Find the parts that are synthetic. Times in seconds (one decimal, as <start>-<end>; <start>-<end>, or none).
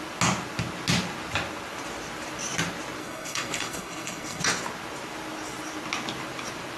3.0-4.4